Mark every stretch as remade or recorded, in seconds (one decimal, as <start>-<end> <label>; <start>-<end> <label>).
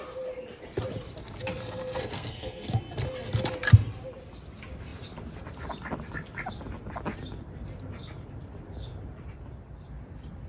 0.0-1.6 recorded; 1.6-2.8 remade; 2.8-10.5 recorded